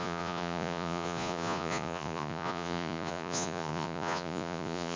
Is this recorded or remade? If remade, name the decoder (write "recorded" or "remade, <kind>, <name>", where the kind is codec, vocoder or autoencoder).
remade, vocoder, Vocos